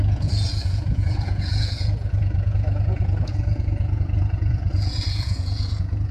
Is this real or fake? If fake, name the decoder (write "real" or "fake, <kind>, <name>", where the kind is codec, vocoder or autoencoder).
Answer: fake, vocoder, Vocos